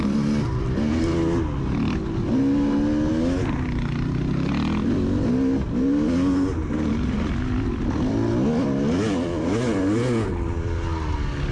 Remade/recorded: recorded